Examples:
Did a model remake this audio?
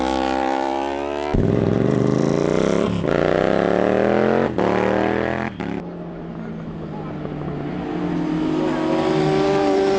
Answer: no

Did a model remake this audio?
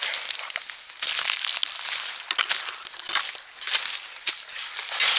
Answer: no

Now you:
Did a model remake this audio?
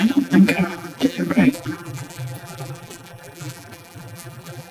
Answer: yes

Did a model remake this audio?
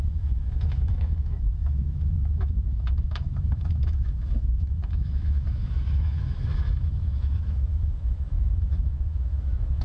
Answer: yes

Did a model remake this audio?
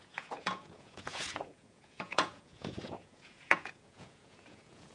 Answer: yes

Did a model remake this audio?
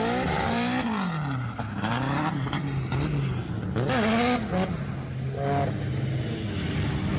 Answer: no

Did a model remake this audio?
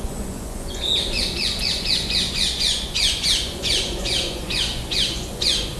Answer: yes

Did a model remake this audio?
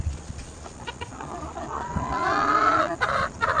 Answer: yes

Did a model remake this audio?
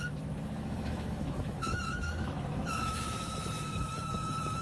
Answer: yes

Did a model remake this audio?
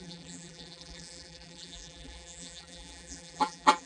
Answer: yes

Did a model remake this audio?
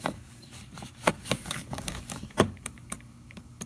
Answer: yes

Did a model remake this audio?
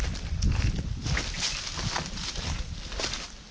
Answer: no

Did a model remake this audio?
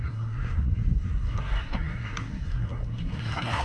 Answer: yes